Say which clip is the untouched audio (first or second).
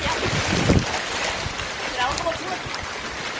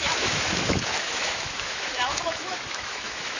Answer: first